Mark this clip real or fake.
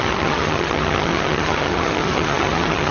fake